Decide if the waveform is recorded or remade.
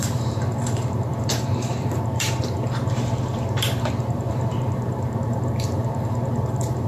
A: remade